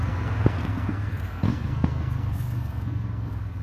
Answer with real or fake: fake